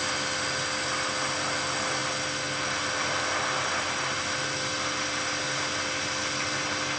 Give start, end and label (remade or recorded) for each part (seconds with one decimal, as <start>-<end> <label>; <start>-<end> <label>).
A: 0.0-7.0 recorded